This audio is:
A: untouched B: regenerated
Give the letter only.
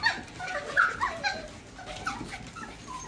A